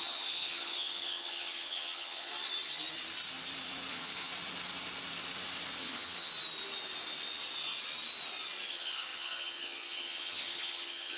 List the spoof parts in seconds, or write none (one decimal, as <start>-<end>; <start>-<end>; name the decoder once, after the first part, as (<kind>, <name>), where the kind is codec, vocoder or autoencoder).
0.0-2.3 (vocoder, HiFi-GAN); 3.9-4.3; 5.8-6.3; 8.7-11.2